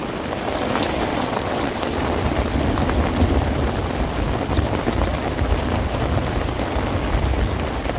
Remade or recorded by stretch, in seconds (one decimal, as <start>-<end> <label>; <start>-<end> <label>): 0.0-1.1 recorded; 1.1-1.8 remade; 1.8-8.0 recorded